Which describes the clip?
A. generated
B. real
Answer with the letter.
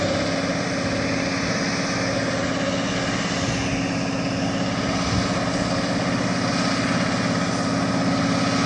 B